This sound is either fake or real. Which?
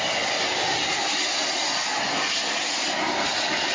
real